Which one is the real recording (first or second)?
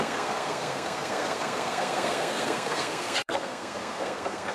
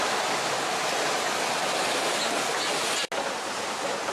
second